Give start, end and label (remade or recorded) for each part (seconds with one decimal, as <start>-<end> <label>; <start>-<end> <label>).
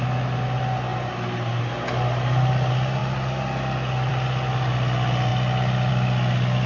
0.0-6.7 recorded